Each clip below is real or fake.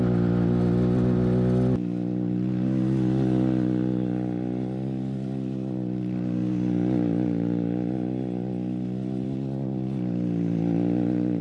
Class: real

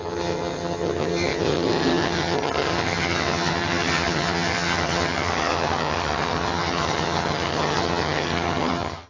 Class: fake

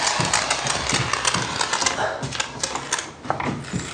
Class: real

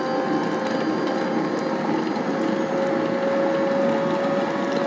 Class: real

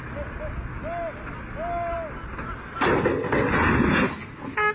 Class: real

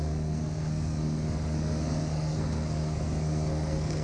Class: fake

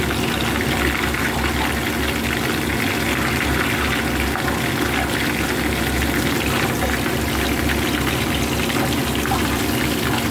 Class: real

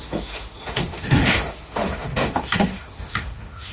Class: fake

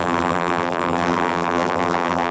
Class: fake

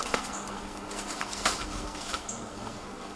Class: fake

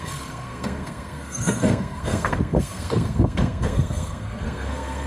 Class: fake